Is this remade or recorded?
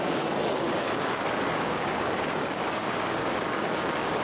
remade